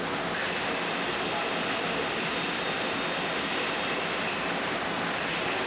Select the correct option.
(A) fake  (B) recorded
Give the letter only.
B